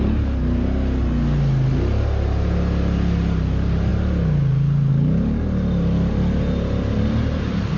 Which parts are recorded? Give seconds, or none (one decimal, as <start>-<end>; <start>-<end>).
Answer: 0.0-7.8